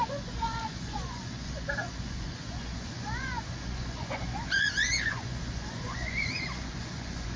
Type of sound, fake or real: fake